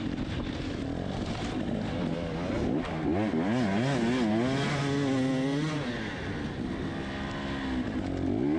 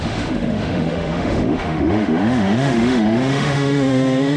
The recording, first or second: first